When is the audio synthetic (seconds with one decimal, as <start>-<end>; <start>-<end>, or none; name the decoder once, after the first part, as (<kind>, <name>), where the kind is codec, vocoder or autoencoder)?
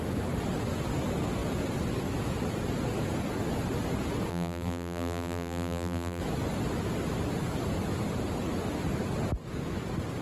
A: 4.3-6.2 (vocoder, BigVGAN v2)